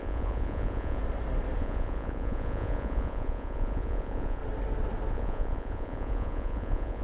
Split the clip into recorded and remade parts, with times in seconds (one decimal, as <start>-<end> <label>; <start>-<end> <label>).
0.0-1.0 remade; 1.0-1.6 recorded; 1.6-4.4 remade; 4.4-5.1 recorded; 5.1-7.0 remade